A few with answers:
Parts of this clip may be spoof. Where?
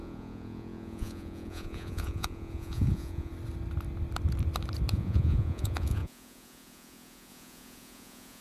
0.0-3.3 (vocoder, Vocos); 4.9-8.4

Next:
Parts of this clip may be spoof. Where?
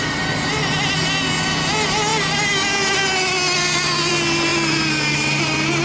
none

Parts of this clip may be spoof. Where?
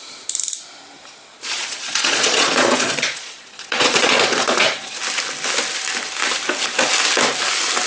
1.3-5.0 (vocoder, Vocos)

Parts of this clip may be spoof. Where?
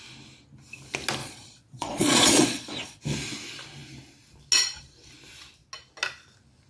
1.2-3.0 (vocoder, Vocos)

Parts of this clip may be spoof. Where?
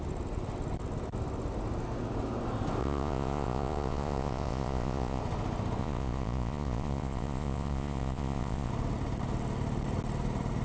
2.8-5.2 (vocoder, Vocos); 5.8-8.7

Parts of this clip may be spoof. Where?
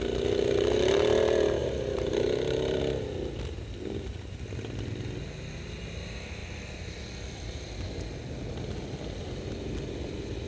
1.6-2.8 (vocoder, BigVGAN v2)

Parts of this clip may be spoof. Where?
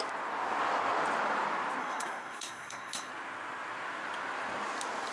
1.8-3.1 (codec, SNAC)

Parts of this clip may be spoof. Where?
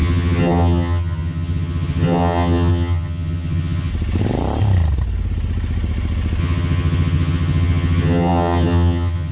0.0-3.9 (vocoder, HiFi-GAN); 6.4-9.3